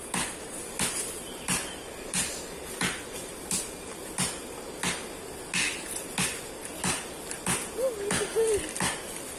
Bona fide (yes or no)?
yes